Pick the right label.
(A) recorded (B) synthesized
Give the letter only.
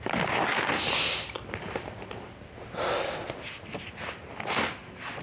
A